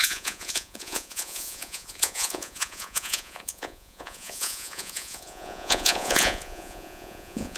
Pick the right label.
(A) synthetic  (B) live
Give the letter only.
A